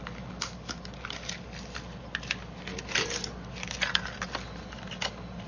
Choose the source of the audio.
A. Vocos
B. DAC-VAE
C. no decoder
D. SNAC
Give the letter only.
C